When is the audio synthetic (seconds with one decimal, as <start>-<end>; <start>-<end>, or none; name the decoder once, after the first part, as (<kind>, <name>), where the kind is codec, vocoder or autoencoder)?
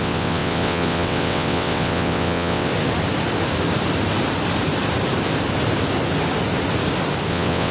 0.0-2.7 (vocoder, WaveNeXt); 7.3-7.7